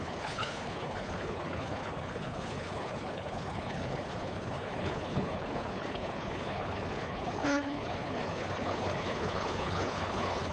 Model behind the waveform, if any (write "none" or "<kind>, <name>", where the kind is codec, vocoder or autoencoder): codec, HILCodec